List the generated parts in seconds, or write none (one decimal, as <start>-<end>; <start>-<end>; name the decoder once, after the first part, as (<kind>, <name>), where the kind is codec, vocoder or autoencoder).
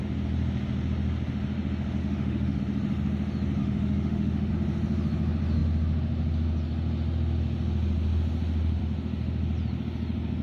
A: 2.0-2.6 (autoencoder, DAC-VAE); 3.6-4.5